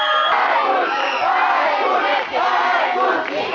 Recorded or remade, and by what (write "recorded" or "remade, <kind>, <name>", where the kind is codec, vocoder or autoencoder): recorded